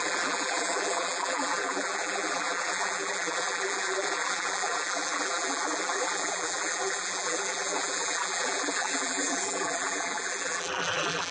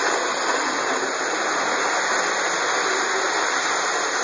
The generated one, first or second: first